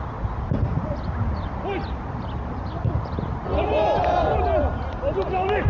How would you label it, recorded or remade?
recorded